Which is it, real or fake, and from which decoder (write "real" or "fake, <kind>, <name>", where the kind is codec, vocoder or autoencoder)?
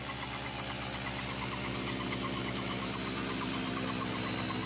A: real